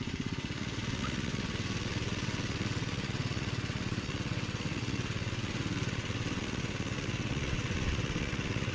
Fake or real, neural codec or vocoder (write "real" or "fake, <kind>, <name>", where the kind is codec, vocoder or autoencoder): fake, vocoder, WaveNeXt